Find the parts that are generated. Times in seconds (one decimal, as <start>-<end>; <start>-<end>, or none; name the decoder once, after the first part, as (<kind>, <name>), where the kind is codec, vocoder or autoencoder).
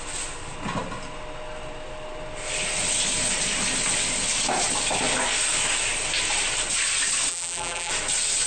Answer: 7.3-7.9 (vocoder, BigVGAN v2)